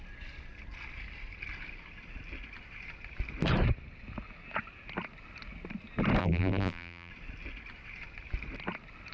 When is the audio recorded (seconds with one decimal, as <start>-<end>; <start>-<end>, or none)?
0.0-6.2; 7.1-9.1